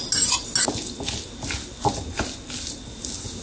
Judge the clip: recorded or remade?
recorded